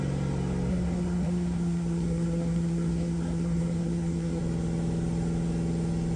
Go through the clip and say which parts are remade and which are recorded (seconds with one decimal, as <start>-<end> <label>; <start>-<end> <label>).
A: 0.0-0.7 recorded; 0.7-4.4 remade; 4.4-6.2 recorded